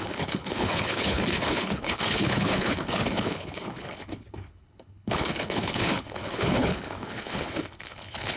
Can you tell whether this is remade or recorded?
remade